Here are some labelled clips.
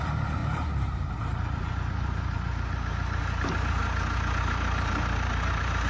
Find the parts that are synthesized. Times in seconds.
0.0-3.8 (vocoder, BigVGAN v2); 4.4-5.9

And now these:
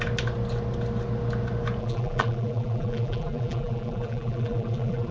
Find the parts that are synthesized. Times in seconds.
1.8-5.1 (vocoder, BigVGAN v2)